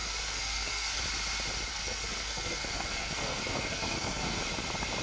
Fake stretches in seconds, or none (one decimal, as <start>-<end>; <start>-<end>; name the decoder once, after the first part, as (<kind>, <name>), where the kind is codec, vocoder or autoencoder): 0.0-1.0 (codec, SNAC); 1.7-4.4